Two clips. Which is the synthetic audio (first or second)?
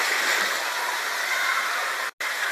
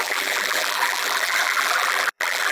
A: second